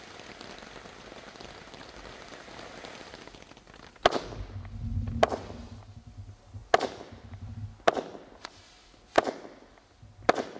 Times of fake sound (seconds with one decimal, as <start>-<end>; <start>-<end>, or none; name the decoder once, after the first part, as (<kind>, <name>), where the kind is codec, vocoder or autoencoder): none